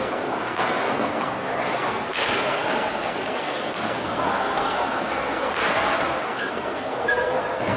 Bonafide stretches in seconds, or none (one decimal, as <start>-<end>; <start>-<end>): none